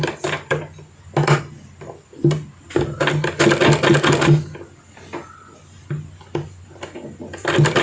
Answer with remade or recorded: recorded